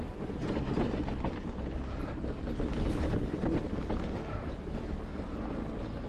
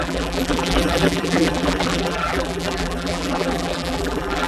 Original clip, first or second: first